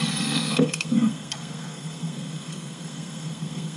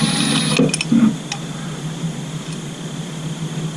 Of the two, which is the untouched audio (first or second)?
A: second